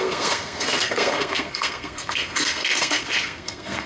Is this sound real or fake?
fake